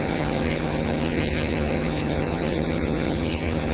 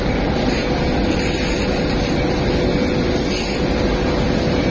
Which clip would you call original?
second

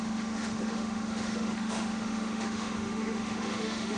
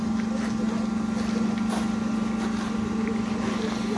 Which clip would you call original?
second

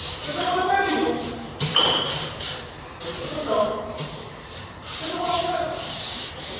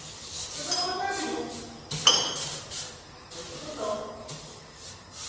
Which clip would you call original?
second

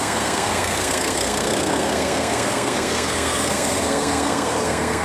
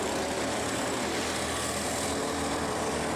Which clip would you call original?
second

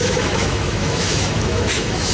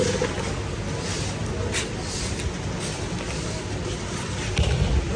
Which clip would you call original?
second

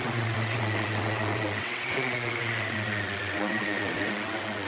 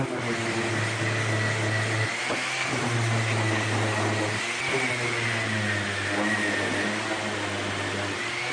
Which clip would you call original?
second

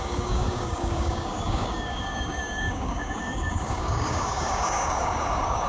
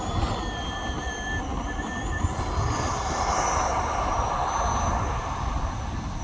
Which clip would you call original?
second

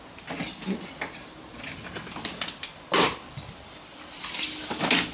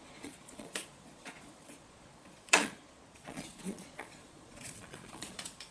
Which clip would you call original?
first